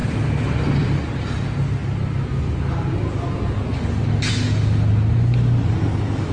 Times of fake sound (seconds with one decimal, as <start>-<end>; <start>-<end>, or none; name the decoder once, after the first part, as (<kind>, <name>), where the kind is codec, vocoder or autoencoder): none